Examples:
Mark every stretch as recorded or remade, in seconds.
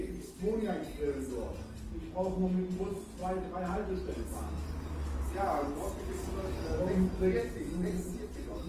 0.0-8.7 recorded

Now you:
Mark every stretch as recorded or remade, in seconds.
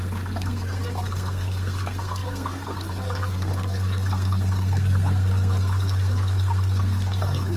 0.0-7.6 remade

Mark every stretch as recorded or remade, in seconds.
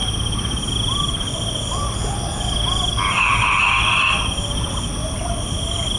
0.0-6.0 recorded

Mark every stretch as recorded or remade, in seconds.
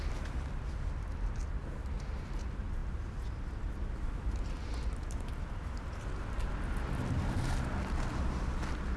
0.0-9.0 recorded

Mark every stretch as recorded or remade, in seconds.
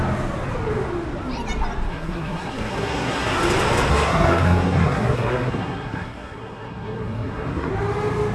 0.0-1.9 recorded; 1.9-3.4 remade; 3.4-3.9 recorded; 3.9-7.7 remade; 7.7-8.3 recorded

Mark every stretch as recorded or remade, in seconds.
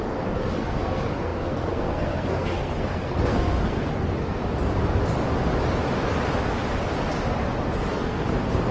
0.0-4.4 remade; 4.4-7.9 recorded; 7.9-8.7 remade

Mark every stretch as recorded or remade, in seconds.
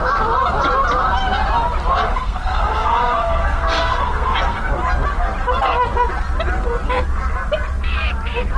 0.0-2.1 recorded; 2.1-4.7 remade; 4.7-8.6 recorded